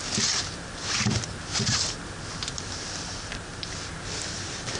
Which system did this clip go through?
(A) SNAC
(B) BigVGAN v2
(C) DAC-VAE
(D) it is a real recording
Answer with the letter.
D